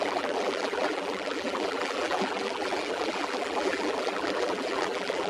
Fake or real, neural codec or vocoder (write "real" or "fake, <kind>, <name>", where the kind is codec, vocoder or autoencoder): fake, vocoder, BigVGAN v2